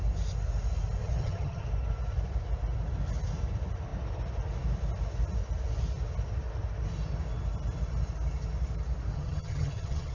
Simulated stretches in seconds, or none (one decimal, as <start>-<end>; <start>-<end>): 1.0-1.7; 9.1-10.1

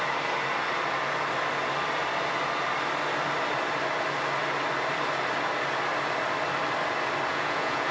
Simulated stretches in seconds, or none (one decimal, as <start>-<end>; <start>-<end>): 7.3-7.9

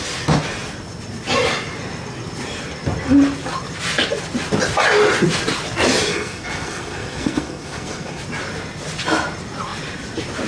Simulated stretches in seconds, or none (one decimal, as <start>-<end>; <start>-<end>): 6.1-8.2

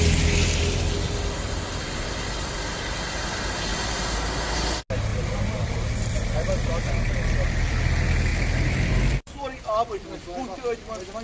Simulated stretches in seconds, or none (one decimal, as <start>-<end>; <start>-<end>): 3.7-4.5; 5.1-7.8; 8.3-9.9